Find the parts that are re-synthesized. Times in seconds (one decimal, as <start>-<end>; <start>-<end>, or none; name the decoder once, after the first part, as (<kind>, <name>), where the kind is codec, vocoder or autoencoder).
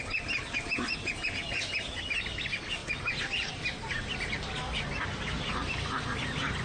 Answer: none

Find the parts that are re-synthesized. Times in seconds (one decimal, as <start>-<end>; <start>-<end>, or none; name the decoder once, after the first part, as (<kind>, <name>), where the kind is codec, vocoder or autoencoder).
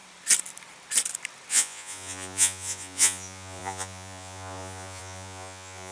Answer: 1.5-5.9 (vocoder, Vocos)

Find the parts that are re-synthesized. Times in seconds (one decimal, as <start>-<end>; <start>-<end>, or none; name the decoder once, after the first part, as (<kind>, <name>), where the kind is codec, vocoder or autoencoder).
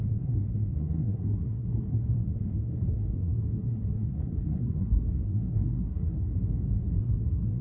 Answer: 0.0-6.3 (codec, SNAC); 7.0-7.6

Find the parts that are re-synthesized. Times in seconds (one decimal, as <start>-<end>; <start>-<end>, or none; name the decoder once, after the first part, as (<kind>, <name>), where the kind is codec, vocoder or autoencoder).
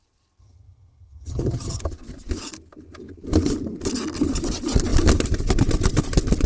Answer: 0.4-1.8 (vocoder, HiFi-GAN)